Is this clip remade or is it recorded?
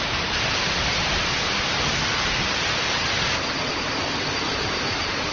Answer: recorded